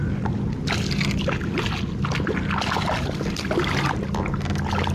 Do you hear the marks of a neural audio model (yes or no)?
no